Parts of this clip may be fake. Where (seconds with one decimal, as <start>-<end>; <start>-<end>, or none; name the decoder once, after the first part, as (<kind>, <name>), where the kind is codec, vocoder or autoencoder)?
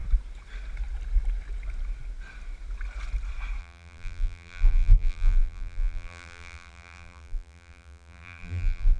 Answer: 3.6-9.0 (vocoder, BigVGAN v2)